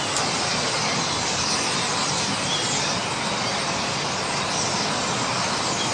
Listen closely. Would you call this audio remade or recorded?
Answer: recorded